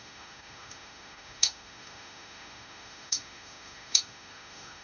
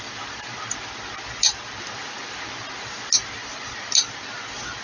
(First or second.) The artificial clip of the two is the first